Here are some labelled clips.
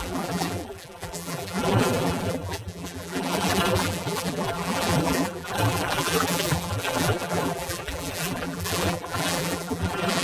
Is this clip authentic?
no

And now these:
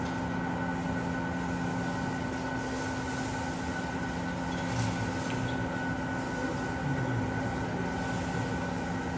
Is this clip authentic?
yes